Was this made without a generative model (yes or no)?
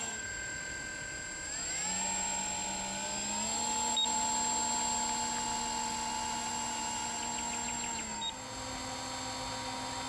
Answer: yes